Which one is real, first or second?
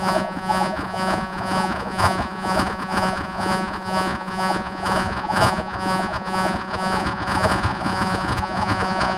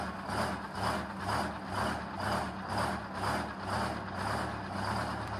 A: second